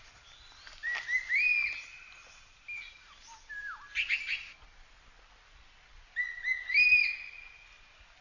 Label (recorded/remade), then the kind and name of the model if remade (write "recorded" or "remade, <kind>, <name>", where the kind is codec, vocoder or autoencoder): recorded